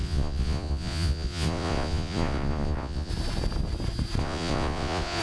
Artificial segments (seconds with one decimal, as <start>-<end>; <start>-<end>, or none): 0.0-3.1; 4.2-5.2

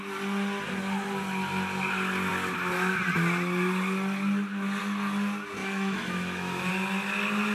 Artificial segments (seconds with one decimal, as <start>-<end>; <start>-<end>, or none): 5.6-6.7